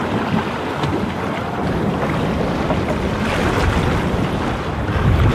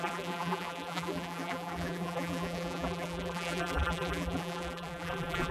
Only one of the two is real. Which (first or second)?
first